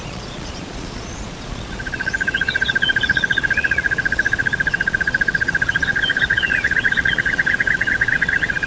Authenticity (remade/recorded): remade